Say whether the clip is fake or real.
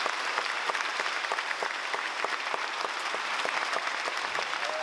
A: real